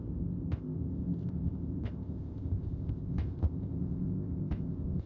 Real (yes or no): no